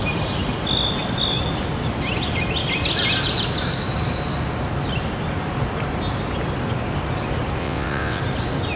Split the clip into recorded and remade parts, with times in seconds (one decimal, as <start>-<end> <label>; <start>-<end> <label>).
0.0-7.6 recorded; 7.6-8.2 remade; 8.2-8.8 recorded